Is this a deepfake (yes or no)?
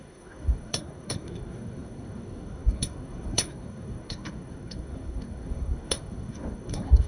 yes